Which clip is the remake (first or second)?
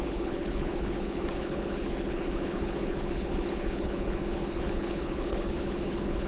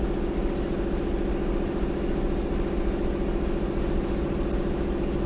first